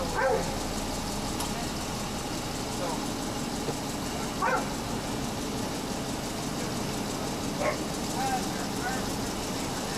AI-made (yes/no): no